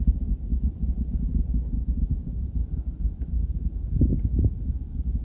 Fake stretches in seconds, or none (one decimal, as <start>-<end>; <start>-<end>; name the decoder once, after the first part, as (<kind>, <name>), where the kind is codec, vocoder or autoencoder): 0.5-1.3 (vocoder, BigVGAN v2); 2.2-2.7

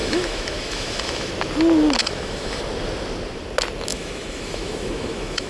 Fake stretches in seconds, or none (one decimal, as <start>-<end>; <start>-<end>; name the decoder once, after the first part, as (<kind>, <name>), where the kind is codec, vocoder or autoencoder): 0.0-1.3 (autoencoder, DAC-VAE); 2.0-2.6; 3.9-5.5